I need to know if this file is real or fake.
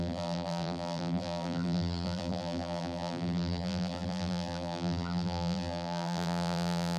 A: fake